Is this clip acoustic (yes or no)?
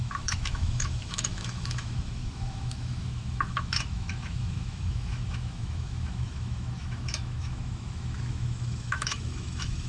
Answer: no